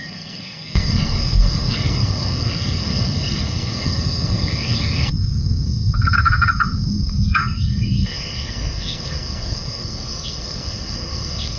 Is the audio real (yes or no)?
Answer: no